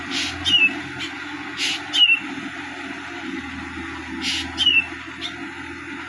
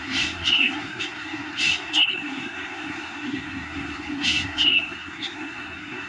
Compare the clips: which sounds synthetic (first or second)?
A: second